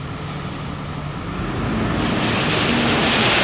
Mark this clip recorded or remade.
recorded